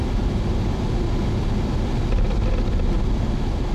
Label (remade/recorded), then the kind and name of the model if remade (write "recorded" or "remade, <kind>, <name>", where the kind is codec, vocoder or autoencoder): recorded